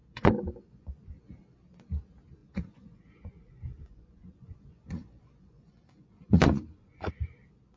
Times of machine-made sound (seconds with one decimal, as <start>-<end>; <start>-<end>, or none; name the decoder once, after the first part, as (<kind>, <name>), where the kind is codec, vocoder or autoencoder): 0.0-1.2 (vocoder, Vocos); 2.4-7.1

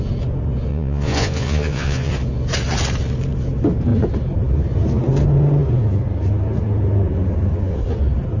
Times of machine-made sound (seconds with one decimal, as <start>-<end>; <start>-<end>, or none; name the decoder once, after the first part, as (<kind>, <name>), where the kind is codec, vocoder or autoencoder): 0.7-2.1 (vocoder, Vocos)

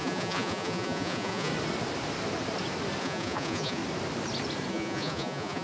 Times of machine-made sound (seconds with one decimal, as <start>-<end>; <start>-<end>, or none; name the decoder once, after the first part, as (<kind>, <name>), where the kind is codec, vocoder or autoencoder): 0.0-1.5 (vocoder, Vocos); 3.0-3.8; 4.7-5.6

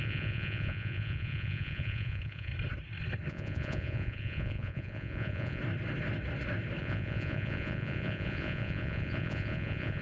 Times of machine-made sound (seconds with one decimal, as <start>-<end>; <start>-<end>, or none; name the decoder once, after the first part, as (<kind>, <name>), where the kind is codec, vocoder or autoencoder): 0.0-2.5 (vocoder, Vocos); 3.3-5.6; 6.8-10.0

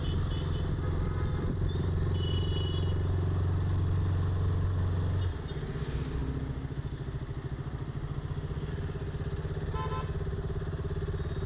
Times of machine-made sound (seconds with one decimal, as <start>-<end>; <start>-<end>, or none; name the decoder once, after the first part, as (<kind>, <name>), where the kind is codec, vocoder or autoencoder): none